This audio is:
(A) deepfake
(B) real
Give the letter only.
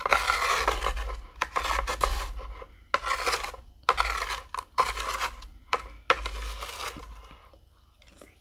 B